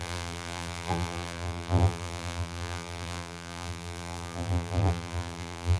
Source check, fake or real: fake